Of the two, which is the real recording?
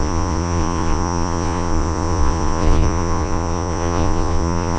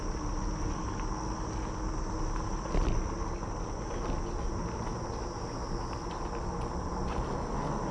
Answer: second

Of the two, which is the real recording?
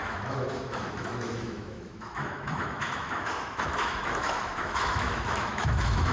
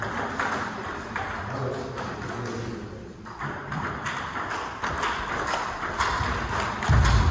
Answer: second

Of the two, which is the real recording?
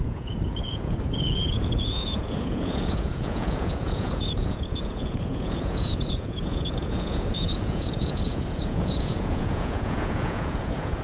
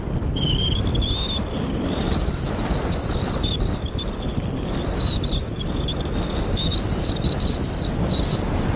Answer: second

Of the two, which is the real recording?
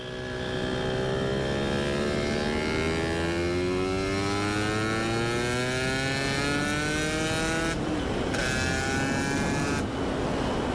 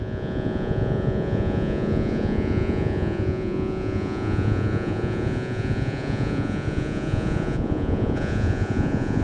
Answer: first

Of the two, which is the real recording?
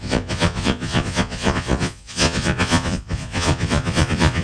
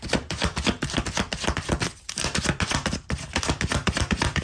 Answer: second